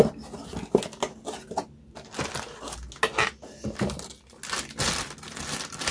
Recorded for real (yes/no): yes